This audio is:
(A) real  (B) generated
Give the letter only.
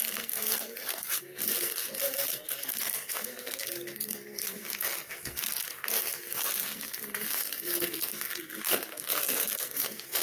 B